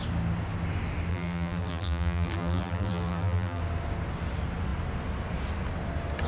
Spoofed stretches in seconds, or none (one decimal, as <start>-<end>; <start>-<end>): 1.1-3.6